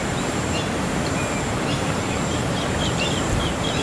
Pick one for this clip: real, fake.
fake